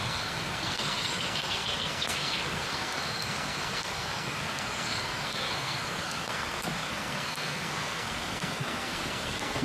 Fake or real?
fake